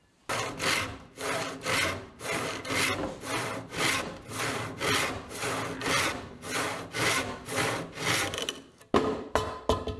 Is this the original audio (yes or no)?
yes